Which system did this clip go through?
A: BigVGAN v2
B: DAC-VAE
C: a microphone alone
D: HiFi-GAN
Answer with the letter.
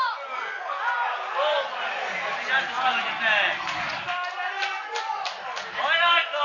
C